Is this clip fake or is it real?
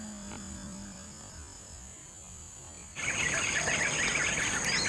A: real